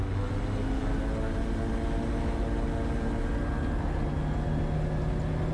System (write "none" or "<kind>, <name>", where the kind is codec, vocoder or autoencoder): none